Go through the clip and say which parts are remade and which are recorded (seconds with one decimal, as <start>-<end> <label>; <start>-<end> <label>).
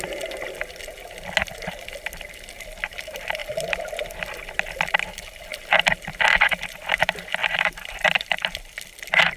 0.0-3.4 recorded; 3.4-4.2 remade; 4.2-7.4 recorded; 7.4-9.4 remade